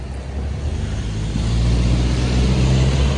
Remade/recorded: recorded